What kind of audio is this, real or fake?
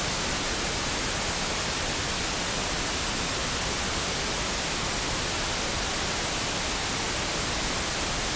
real